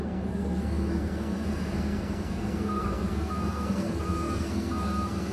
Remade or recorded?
remade